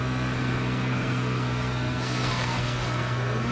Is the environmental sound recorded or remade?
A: remade